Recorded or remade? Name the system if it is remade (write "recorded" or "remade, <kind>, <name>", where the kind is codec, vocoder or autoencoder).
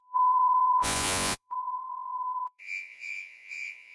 remade, vocoder, Vocos